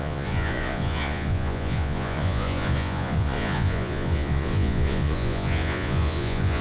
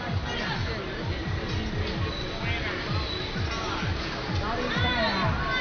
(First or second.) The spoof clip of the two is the first